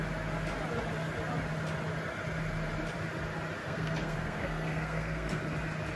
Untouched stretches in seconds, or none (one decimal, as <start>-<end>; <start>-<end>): 0.0-3.6; 5.4-6.0